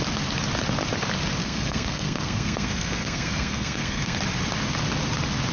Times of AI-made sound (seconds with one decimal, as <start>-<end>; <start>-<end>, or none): 1.4-4.2